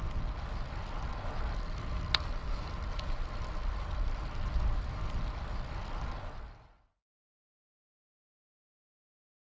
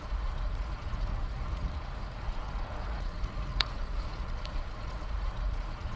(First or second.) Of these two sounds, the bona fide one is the first